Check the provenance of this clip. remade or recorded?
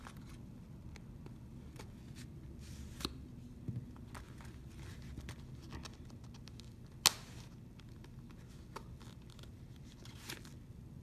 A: recorded